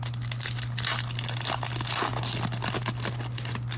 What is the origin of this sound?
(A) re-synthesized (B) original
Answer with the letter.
B